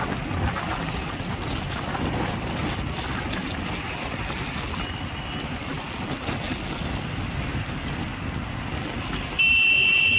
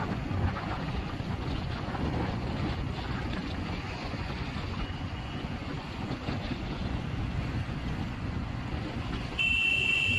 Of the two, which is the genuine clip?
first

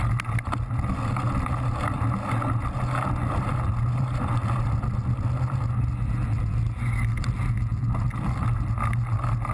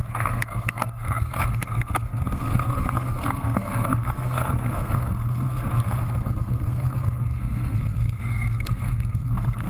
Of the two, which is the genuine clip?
first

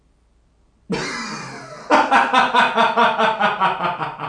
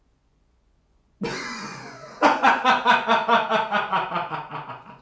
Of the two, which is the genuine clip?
first